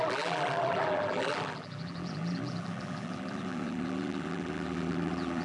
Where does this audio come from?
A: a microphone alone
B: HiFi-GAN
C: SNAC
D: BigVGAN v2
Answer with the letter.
D